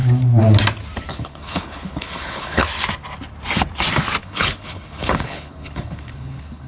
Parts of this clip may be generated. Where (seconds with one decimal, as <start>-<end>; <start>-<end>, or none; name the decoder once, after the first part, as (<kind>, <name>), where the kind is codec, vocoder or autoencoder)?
1.1-2.6 (codec, HILCodec); 4.2-6.7